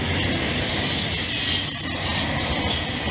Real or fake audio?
real